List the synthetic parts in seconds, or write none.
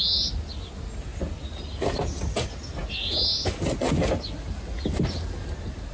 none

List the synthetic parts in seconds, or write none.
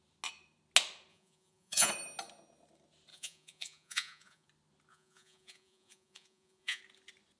1.1-1.9 (vocoder, Vocos); 3.1-4.5; 4.9-6.8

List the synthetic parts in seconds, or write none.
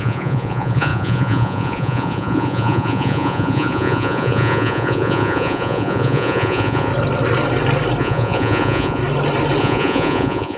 0.0-6.9 (vocoder, Vocos); 8.0-9.0; 9.6-10.6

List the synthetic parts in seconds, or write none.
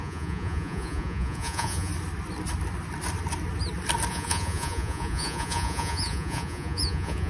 0.0-1.9 (vocoder, Vocos); 4.1-7.3